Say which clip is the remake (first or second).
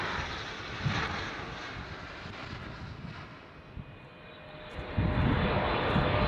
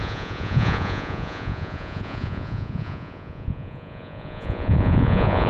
second